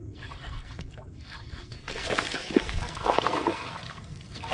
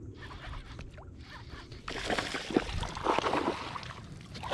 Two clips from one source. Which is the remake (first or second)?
first